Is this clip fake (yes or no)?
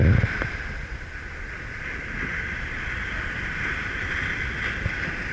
no